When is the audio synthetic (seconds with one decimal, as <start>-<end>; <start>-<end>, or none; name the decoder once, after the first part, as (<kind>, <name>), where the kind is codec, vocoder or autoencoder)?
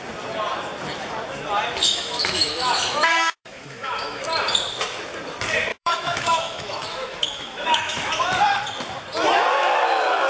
1.8-4.2 (autoencoder, DAC-VAE); 5.7-8.1; 9.5-10.3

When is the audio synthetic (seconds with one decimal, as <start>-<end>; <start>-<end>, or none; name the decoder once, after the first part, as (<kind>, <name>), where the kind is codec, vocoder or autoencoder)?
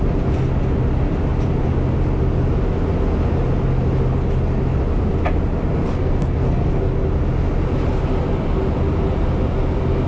5.9-6.8 (codec, SNAC)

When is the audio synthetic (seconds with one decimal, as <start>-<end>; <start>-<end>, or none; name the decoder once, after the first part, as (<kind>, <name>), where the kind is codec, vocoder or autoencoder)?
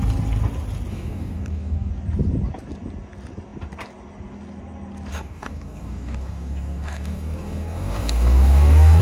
0.9-1.9 (codec, DAC); 5.1-9.0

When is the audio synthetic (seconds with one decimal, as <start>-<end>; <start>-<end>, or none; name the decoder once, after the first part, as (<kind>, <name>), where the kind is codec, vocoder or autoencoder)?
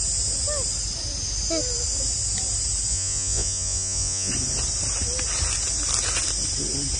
2.9-4.3 (vocoder, Vocos)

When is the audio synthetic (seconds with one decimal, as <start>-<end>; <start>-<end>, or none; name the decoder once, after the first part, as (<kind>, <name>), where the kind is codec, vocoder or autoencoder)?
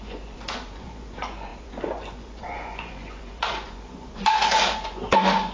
0.0-5.5 (vocoder, Vocos)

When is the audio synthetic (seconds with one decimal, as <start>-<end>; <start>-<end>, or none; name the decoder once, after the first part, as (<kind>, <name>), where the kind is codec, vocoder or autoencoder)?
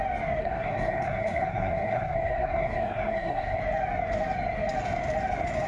0.4-3.6 (codec, SNAC)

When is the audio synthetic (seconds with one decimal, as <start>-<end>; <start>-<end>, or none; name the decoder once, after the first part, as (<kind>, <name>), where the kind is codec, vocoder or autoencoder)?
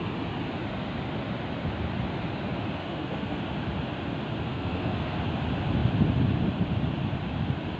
2.8-3.4 (codec, SNAC); 4.5-5.2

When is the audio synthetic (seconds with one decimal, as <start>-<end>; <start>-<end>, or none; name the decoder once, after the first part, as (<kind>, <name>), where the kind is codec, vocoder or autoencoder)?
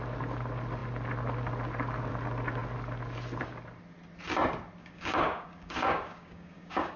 4.8-7.0 (codec, DAC)